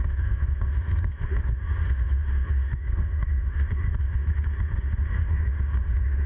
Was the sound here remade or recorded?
remade